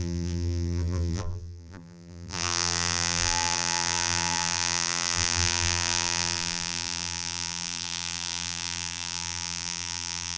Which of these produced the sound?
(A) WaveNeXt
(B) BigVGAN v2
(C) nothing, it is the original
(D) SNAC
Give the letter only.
B